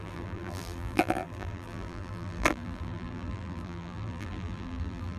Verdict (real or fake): fake